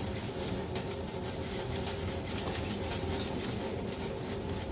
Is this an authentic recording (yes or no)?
yes